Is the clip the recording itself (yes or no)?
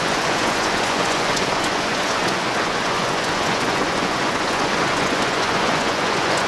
no